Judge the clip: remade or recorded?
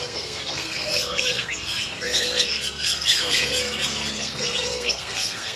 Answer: remade